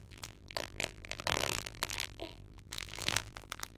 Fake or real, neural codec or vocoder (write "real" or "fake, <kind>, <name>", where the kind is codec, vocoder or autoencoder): fake, vocoder, BigVGAN v2